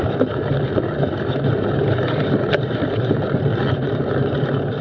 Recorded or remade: remade